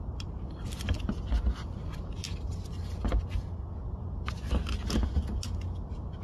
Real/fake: real